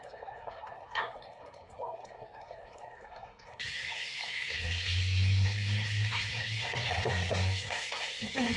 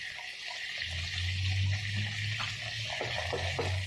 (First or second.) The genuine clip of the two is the second